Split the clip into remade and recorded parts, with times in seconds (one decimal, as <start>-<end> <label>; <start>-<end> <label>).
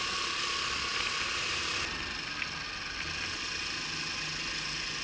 0.0-5.0 recorded